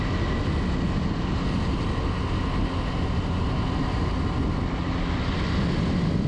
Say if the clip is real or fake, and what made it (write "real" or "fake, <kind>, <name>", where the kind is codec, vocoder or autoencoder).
real